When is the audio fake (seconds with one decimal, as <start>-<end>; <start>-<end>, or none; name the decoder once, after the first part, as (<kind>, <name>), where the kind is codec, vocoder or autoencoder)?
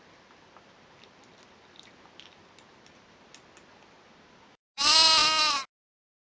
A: none